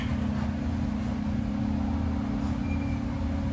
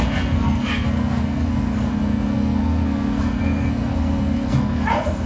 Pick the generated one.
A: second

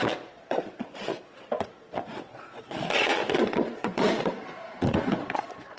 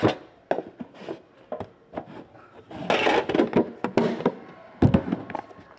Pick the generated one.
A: first